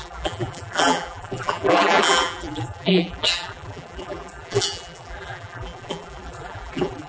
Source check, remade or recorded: remade